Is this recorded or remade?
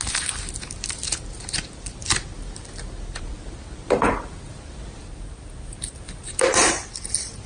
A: recorded